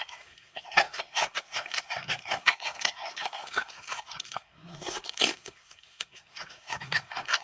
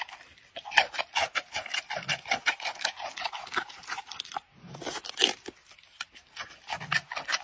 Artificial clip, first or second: first